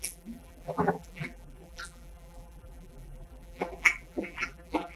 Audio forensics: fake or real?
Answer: fake